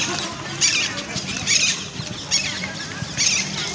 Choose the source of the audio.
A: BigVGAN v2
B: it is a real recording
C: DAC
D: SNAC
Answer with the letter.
A